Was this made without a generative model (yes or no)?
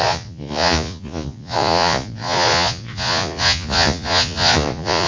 no